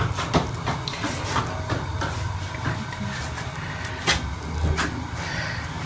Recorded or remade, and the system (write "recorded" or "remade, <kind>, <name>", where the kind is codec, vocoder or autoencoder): recorded